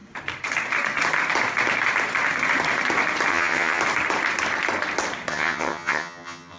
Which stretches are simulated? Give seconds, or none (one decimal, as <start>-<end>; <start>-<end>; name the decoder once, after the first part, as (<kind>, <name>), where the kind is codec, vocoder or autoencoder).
3.3-3.8 (vocoder, HiFi-GAN); 5.3-6.6